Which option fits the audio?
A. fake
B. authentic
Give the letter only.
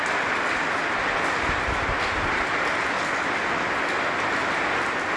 B